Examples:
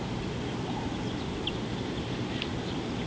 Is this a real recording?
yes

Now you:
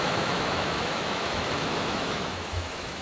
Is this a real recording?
no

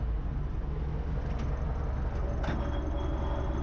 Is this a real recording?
yes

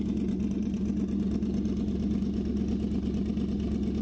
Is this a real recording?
yes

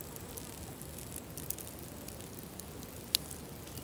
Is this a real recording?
yes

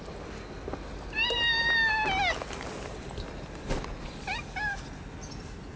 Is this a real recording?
yes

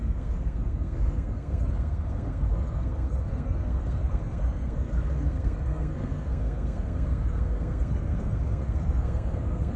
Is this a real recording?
no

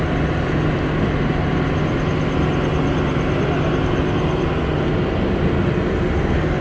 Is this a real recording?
yes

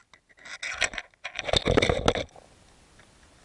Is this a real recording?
yes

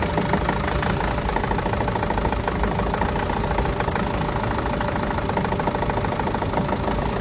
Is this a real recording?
yes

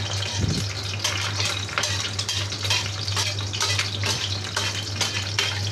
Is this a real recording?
yes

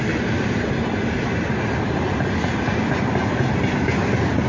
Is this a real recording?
yes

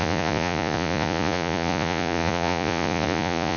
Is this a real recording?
no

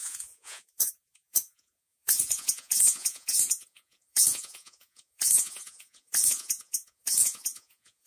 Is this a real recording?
no